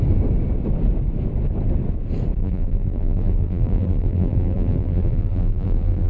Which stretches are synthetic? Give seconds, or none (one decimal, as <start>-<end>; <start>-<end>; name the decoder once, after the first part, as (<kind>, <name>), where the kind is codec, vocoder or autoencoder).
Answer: 2.4-6.1 (vocoder, BigVGAN v2)